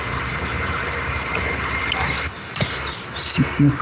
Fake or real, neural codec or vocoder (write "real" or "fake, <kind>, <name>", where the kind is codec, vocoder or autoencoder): fake, vocoder, BigVGAN v2